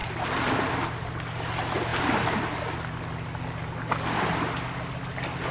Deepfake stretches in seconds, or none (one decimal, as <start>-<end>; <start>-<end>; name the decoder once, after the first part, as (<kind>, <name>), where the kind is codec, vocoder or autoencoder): none